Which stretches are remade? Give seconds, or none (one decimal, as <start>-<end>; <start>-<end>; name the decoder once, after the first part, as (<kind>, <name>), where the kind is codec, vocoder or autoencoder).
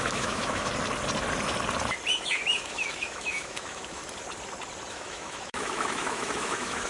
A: 0.0-0.7 (autoencoder, DAC-VAE); 2.1-4.0; 4.9-6.9